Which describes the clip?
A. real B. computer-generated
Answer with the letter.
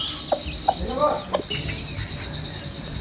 A